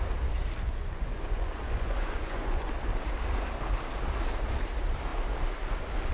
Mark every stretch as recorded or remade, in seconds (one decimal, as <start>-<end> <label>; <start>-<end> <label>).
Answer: 0.0-0.8 recorded; 0.8-2.7 remade; 2.7-6.1 recorded